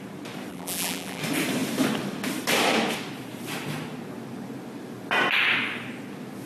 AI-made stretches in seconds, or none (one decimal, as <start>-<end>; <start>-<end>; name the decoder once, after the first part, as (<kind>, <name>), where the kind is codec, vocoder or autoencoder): 0.5-1.2 (vocoder, BigVGAN v2)